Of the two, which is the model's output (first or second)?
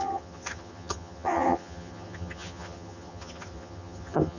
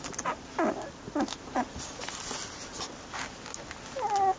first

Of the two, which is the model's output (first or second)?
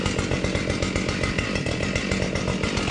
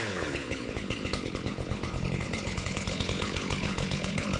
second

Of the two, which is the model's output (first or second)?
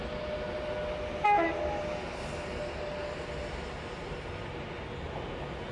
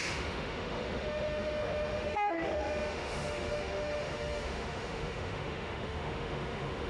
second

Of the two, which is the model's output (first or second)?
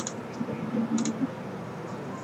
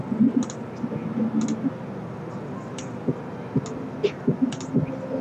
first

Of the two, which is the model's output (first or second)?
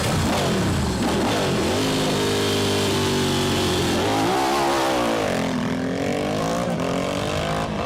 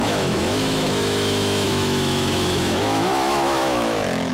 second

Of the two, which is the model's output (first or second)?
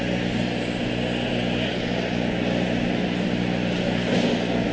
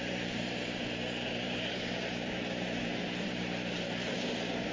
second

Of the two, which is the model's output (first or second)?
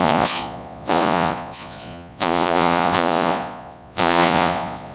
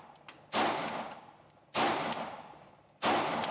first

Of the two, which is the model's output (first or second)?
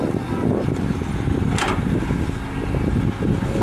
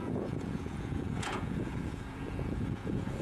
second